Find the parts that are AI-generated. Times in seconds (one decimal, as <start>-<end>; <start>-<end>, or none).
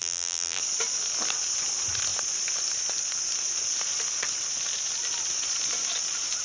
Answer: 0.0-0.6